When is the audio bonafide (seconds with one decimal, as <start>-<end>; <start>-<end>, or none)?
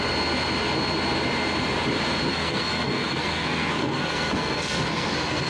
0.0-2.3